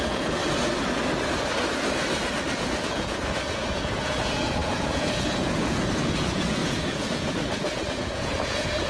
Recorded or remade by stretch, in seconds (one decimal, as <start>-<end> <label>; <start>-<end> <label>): 0.0-0.4 remade; 0.4-2.5 recorded; 2.5-8.9 remade

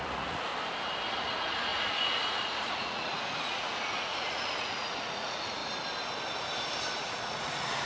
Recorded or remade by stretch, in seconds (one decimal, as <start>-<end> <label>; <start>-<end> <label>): 0.0-0.5 remade; 0.5-1.1 recorded; 1.1-5.6 remade; 5.6-6.9 recorded; 6.9-7.9 remade

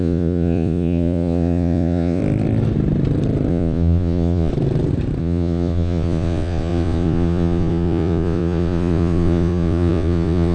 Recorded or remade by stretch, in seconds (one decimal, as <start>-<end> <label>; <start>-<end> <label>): 0.0-2.2 remade; 2.2-3.5 recorded; 3.5-4.5 remade; 4.5-5.2 recorded; 5.2-10.5 remade

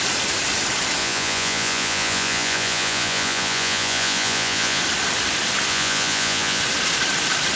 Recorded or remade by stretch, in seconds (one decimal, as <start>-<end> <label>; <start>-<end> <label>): 0.0-1.0 recorded; 1.0-4.8 remade; 4.8-5.7 recorded; 5.7-6.6 remade; 6.6-7.6 recorded

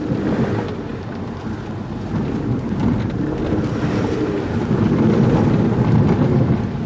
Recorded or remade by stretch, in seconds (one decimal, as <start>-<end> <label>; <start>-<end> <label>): 0.0-6.9 recorded